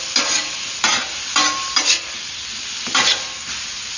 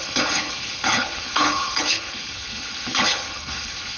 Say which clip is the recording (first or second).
first